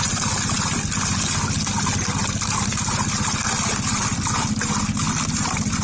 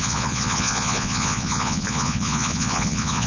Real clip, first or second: first